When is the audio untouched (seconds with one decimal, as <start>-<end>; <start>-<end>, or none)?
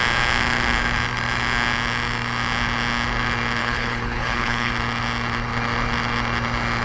0.0-3.6; 4.7-6.8